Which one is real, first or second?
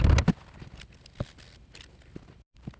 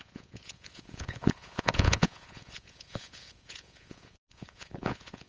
first